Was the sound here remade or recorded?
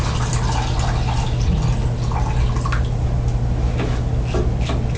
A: recorded